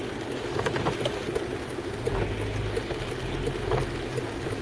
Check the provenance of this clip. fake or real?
real